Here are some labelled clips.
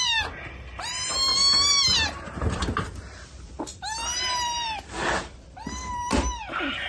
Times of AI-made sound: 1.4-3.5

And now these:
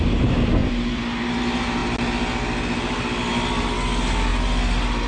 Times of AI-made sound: 0.6-1.4

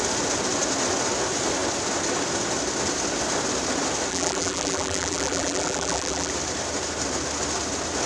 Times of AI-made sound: 4.1-6.3

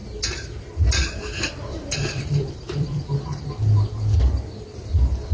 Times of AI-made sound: 1.7-3.5

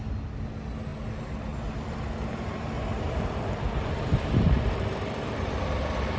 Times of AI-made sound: 2.2-6.2